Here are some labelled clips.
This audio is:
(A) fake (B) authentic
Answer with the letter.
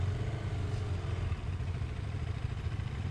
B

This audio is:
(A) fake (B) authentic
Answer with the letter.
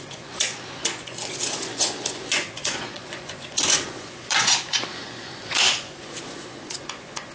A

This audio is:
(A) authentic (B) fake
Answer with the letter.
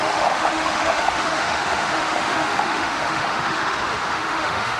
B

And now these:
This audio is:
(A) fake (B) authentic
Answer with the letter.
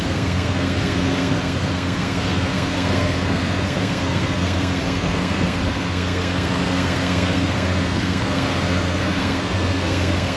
A